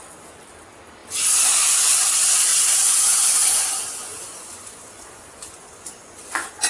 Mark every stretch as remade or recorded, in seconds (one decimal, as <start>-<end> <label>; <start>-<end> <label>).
0.0-2.5 recorded; 2.5-6.7 remade